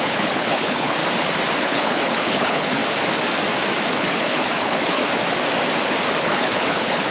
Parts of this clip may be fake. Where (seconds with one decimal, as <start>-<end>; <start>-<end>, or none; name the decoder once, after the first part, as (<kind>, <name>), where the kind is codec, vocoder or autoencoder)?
0.0-1.0 (codec, HILCodec); 1.6-2.8; 3.9-5.0; 6.2-7.1